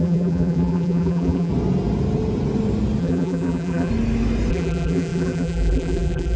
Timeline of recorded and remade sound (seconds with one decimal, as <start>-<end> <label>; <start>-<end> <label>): 0.0-1.5 remade; 1.5-3.0 recorded; 3.0-3.9 remade; 3.9-4.5 recorded; 4.5-6.4 remade